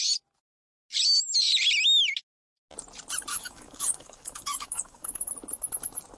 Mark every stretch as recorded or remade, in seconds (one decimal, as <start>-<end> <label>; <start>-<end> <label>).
0.0-3.3 recorded; 3.3-5.3 remade; 5.3-6.2 recorded